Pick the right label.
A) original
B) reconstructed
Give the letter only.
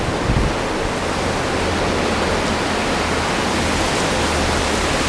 A